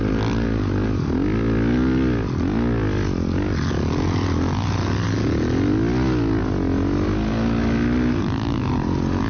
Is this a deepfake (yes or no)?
no